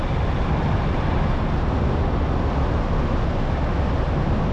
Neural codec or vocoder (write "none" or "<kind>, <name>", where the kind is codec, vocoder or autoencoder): none